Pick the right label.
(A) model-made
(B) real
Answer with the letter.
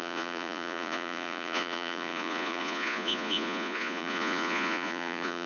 A